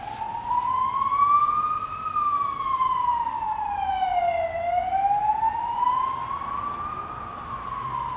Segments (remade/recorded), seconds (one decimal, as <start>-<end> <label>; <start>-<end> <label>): 0.0-8.2 recorded